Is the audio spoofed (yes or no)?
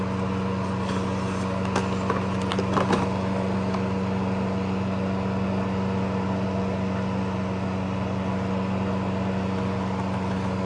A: no